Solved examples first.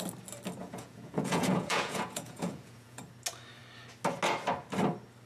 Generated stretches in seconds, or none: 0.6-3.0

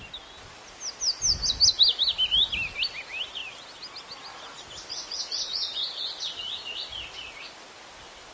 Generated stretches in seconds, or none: none